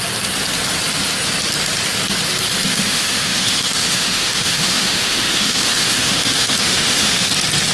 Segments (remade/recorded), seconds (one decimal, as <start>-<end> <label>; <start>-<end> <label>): 0.0-2.7 recorded; 2.7-7.3 remade; 7.3-7.7 recorded